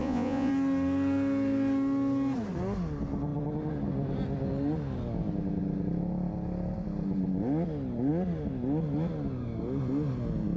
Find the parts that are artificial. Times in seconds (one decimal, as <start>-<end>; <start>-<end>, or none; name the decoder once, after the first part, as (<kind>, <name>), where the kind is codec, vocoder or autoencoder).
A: 0.0-0.5 (vocoder, Vocos)